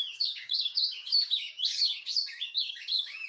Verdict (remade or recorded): remade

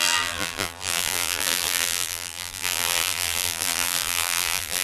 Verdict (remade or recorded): remade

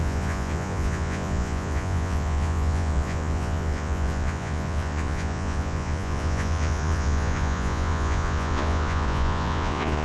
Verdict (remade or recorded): remade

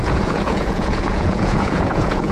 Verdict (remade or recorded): remade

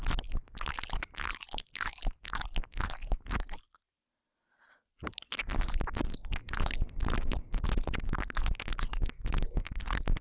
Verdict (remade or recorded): recorded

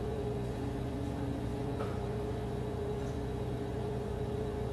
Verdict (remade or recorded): remade